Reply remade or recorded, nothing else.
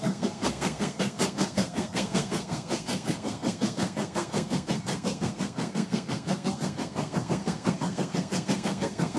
remade